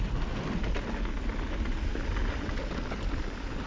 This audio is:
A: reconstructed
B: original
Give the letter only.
B